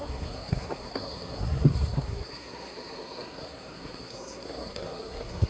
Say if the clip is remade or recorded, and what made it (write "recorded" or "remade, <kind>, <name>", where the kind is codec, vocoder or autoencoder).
remade, codec, SNAC